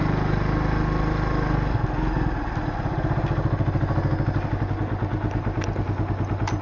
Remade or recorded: recorded